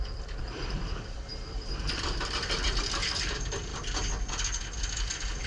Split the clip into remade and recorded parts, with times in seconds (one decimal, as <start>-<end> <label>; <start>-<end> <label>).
0.0-3.7 remade; 3.7-4.8 recorded; 4.8-5.5 remade